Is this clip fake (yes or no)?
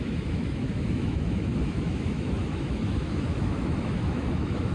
yes